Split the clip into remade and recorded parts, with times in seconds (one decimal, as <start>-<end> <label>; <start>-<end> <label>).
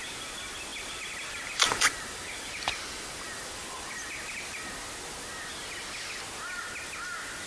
0.0-0.7 recorded; 0.7-4.7 remade; 4.7-7.5 recorded